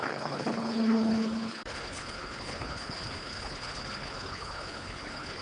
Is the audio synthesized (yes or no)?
yes